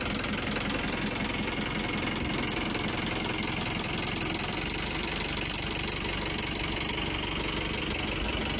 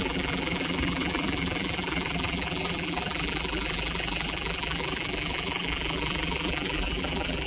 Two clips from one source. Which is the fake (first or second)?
second